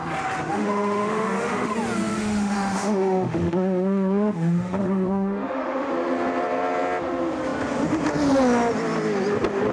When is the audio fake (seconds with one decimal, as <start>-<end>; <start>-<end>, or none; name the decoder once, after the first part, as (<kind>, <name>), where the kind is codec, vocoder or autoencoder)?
0.5-1.7 (autoencoder, DAC-VAE); 2.1-5.9